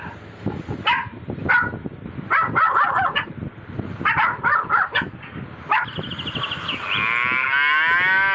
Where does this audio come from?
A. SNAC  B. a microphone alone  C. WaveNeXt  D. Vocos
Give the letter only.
B